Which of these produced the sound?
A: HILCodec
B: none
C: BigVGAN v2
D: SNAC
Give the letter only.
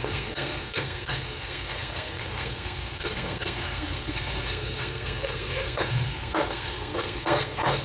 D